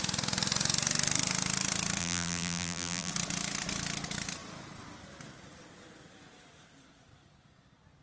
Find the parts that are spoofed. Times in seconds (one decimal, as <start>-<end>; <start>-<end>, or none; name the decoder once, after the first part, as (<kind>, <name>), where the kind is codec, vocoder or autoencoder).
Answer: 2.0-3.1 (vocoder, BigVGAN v2)